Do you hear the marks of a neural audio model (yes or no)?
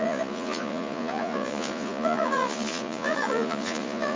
yes